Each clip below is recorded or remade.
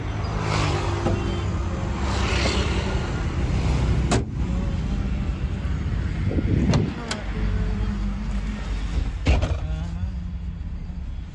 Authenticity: recorded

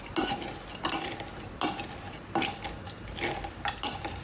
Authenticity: recorded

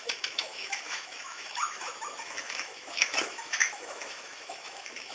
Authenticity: remade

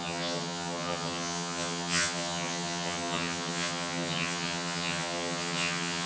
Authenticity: remade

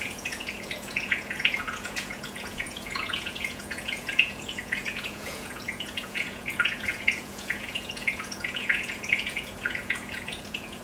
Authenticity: remade